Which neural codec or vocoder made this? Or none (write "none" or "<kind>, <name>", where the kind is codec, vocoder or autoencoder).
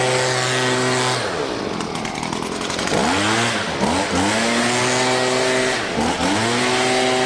none